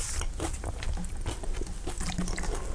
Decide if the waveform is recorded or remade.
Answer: recorded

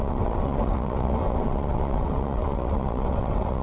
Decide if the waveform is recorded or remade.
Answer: remade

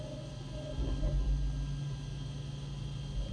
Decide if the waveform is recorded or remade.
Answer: recorded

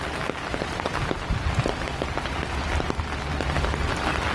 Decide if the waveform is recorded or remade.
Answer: recorded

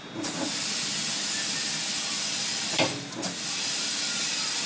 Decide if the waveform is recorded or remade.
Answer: recorded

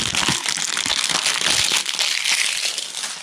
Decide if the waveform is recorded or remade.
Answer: recorded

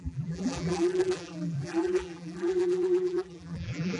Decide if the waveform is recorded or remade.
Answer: remade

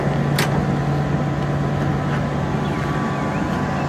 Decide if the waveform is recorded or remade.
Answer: recorded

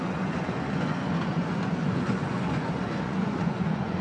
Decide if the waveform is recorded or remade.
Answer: remade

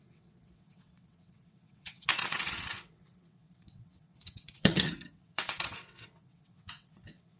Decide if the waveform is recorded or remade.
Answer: remade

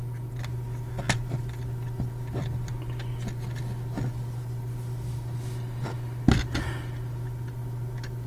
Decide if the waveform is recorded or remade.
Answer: recorded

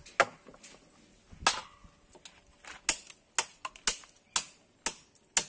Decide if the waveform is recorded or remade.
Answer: recorded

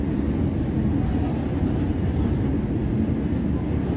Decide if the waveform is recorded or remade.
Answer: recorded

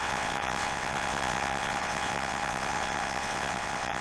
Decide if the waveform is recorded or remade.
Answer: remade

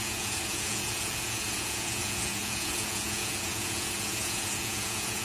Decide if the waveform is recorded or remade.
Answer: remade